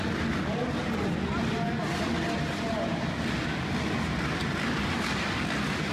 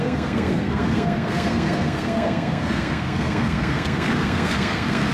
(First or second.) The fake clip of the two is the second